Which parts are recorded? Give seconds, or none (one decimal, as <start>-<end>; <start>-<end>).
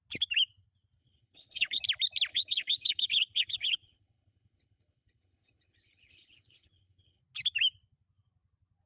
0.0-1.0; 1.8-2.3; 7.2-8.9